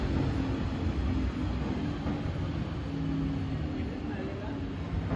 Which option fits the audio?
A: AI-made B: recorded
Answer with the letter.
B